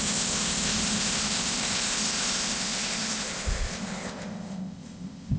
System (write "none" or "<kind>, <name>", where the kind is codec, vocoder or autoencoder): codec, ZipCodec